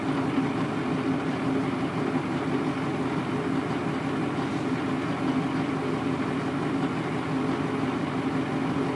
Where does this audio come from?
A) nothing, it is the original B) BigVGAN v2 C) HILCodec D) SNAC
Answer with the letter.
A